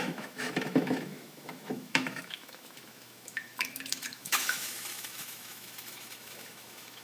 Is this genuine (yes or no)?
no